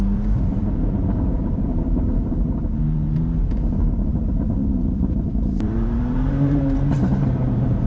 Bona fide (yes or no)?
no